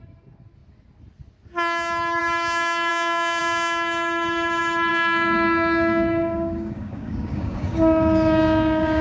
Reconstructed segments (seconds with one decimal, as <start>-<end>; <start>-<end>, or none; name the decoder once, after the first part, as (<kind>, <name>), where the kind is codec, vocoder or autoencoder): 2.9-3.4 (codec, DAC); 4.9-9.0